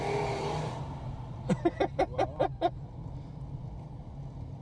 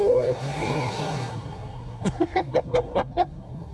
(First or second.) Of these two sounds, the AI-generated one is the second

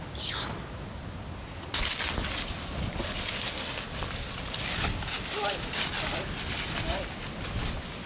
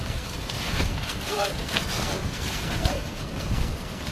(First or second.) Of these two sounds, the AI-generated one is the second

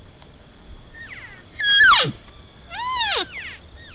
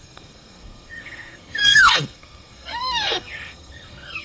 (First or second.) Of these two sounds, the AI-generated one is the second